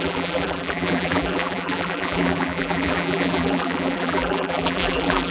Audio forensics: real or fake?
fake